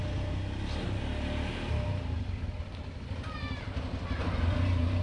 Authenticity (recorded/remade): recorded